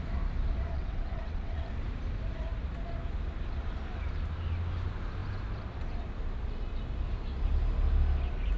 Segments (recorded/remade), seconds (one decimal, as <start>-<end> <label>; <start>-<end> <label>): 0.0-0.7 recorded; 0.7-1.7 remade; 1.7-8.6 recorded